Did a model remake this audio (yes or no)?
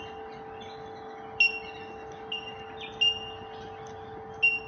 no